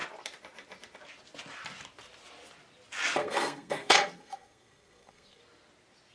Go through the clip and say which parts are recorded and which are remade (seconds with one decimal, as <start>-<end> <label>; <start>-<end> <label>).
0.0-3.2 recorded; 3.2-5.4 remade; 5.4-6.1 recorded

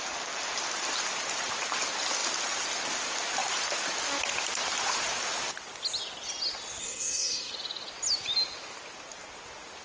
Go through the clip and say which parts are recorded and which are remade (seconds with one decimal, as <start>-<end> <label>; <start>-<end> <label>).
0.0-6.8 recorded; 6.8-7.5 remade; 7.5-9.8 recorded

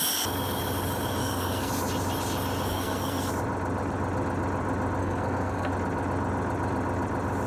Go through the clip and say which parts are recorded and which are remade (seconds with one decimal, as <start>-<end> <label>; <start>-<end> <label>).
0.0-1.2 recorded; 1.2-1.7 remade; 1.7-2.7 recorded; 2.7-3.3 remade; 3.3-5.0 recorded; 5.0-5.7 remade; 5.7-7.5 recorded

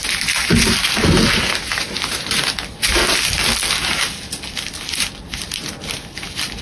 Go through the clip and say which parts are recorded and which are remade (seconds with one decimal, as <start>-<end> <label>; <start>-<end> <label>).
0.0-6.6 recorded

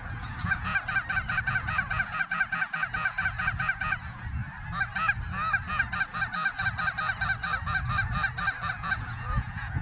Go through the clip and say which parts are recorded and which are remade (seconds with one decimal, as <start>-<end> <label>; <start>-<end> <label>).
0.0-0.7 remade; 0.7-1.4 recorded; 1.4-4.4 remade; 4.4-8.7 recorded; 8.7-9.8 remade